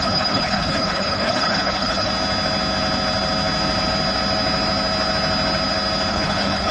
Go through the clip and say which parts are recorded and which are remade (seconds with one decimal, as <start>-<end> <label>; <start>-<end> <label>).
0.0-2.1 remade; 2.1-6.1 recorded; 6.1-6.7 remade